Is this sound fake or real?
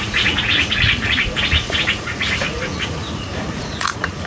fake